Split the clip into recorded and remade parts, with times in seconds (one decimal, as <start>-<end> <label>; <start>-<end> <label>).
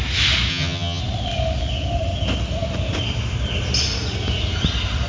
0.0-0.5 recorded; 0.5-1.0 remade; 1.0-5.1 recorded